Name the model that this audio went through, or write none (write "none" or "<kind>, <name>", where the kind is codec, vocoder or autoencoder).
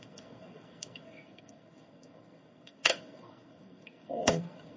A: codec, SNAC